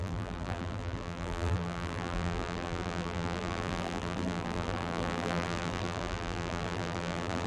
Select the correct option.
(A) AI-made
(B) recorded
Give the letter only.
A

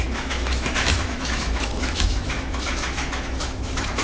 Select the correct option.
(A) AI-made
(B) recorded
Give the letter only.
A